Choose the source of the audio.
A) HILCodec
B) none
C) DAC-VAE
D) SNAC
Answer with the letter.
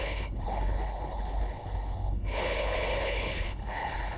A